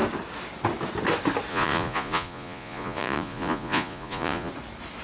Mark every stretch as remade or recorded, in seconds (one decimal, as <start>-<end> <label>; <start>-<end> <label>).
0.0-1.5 recorded; 1.5-4.5 remade; 4.5-5.0 recorded